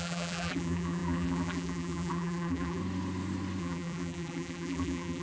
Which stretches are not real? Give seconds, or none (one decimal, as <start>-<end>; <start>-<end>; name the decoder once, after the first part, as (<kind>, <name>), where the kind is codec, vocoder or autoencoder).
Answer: 0.0-2.8 (vocoder, BigVGAN v2); 3.6-5.2